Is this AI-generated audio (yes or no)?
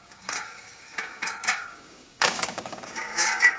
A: yes